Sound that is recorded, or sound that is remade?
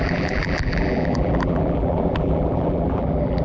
remade